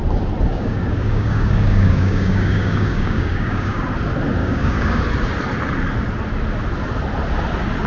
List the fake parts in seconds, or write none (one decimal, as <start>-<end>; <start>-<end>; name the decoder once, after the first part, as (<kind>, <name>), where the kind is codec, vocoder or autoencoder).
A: 0.5-3.8 (codec, DAC); 4.4-5.0